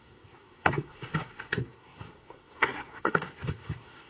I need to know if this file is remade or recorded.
remade